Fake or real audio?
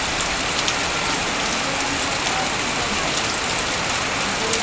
real